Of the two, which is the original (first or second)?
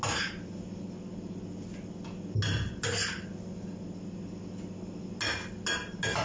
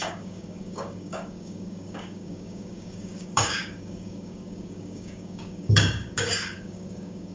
first